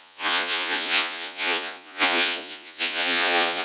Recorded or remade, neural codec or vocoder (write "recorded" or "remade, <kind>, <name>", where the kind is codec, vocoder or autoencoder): remade, vocoder, Vocos